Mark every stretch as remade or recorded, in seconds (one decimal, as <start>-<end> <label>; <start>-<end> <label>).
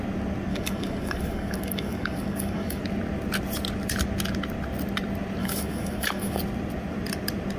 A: 0.0-0.5 recorded; 0.5-2.8 remade; 2.8-5.4 recorded; 5.4-6.4 remade; 6.4-7.6 recorded